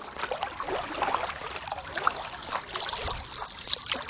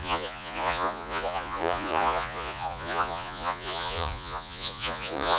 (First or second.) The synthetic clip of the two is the second